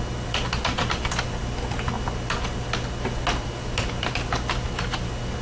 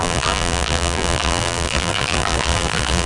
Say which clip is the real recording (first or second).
first